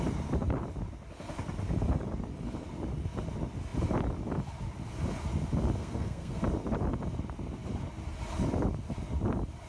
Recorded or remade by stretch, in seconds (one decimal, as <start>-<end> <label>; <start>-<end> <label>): 0.0-5.8 recorded; 5.8-6.4 remade; 6.4-9.7 recorded